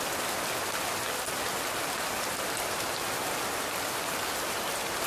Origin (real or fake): real